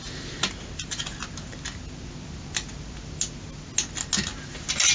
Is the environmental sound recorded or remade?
recorded